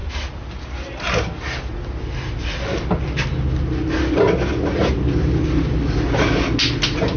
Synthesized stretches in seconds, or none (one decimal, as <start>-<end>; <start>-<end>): none